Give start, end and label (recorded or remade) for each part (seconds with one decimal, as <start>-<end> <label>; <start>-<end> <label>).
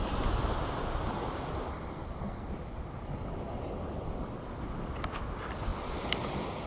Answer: 0.0-1.7 recorded; 1.7-2.5 remade; 2.5-6.7 recorded